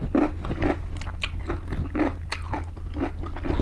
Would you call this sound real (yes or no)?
yes